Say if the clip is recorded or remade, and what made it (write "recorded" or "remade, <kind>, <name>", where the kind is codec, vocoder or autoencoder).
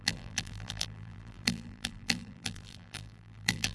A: remade, vocoder, BigVGAN v2